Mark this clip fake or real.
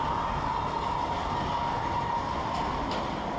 real